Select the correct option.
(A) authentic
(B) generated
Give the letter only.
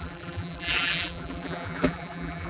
B